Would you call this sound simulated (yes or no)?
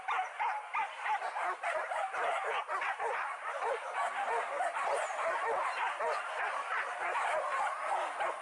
no